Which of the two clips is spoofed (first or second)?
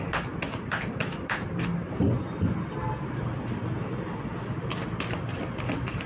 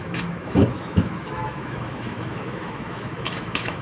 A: second